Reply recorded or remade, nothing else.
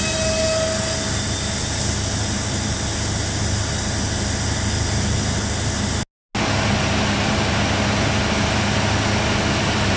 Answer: recorded